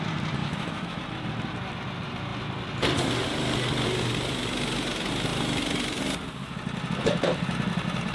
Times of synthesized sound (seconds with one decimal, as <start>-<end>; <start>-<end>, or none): 0.4-1.0